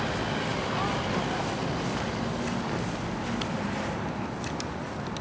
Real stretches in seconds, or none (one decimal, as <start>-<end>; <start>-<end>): 0.0-5.2